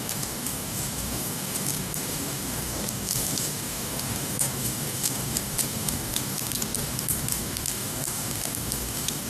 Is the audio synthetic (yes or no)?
yes